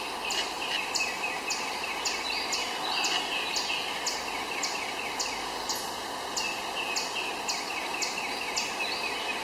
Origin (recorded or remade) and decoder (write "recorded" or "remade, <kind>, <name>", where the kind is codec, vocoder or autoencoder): recorded